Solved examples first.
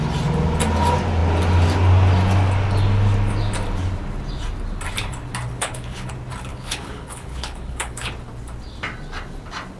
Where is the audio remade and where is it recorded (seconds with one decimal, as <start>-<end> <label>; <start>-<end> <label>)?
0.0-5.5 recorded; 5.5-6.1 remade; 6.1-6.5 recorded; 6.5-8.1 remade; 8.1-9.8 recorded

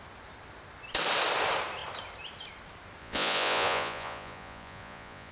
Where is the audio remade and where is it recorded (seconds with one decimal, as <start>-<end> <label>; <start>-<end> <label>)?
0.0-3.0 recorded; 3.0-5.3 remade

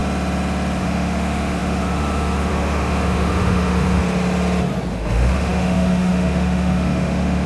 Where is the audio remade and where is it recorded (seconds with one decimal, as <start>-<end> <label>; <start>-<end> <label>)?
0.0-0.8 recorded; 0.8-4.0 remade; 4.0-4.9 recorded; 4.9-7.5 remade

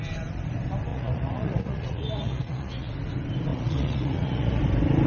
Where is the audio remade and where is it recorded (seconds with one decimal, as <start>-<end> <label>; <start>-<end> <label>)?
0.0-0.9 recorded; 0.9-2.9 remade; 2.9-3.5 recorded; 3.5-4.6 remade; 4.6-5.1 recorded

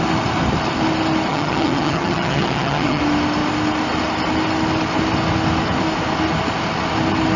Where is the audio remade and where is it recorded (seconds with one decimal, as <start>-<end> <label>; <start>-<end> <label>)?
0.0-1.3 recorded; 1.3-3.0 remade; 3.0-7.4 recorded